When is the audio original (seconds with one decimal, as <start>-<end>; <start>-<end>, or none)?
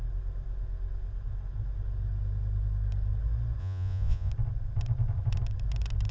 0.0-3.6; 4.3-6.1